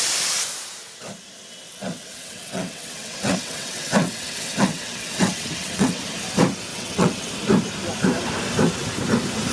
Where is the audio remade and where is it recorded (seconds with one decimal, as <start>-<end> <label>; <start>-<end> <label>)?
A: 0.0-1.7 recorded; 1.7-6.0 remade; 6.0-6.7 recorded; 6.7-7.3 remade; 7.3-9.5 recorded